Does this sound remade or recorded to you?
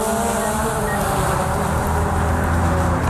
recorded